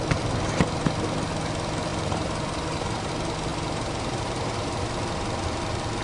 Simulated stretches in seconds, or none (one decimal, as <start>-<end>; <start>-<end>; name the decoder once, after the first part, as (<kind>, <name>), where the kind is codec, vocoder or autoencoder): 1.9-3.1 (vocoder, BigVGAN v2); 3.5-4.9